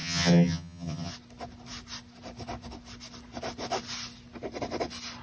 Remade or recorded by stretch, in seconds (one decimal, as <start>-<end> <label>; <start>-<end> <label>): 0.0-1.1 remade; 1.1-5.2 recorded